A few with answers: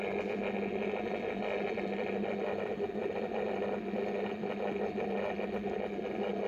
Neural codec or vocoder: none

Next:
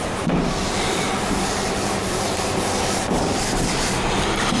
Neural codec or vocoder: vocoder, BigVGAN v2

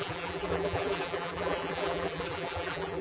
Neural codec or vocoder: vocoder, BigVGAN v2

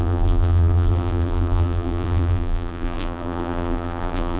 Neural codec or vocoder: vocoder, BigVGAN v2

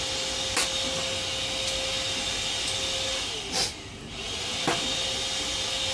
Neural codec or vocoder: none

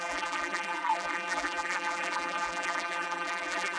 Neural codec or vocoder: vocoder, BigVGAN v2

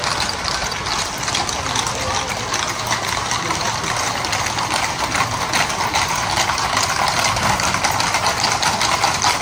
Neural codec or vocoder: none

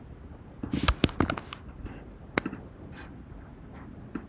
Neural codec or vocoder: none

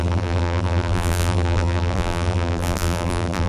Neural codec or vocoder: vocoder, BigVGAN v2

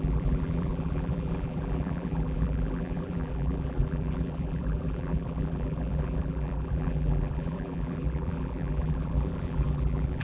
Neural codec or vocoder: vocoder, BigVGAN v2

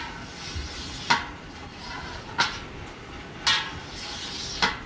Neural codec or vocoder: none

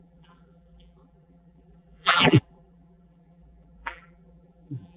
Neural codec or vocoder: vocoder, BigVGAN v2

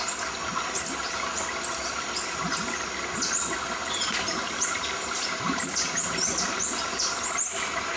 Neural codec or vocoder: none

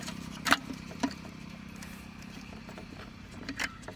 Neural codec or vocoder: vocoder, BigVGAN v2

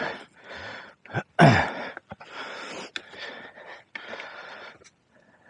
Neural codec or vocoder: none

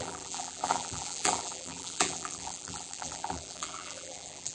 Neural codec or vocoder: vocoder, BigVGAN v2